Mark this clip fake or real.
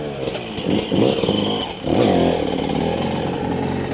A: real